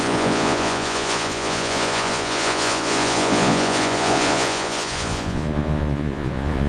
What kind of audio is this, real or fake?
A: fake